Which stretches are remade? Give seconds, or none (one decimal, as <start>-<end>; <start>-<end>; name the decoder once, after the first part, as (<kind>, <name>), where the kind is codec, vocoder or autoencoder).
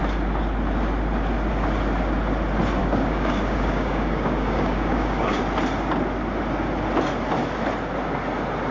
2.8-5.4 (codec, DAC)